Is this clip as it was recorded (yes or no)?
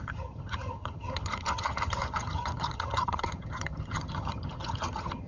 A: no